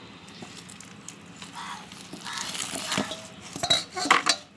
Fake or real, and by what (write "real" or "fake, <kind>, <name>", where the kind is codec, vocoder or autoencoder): real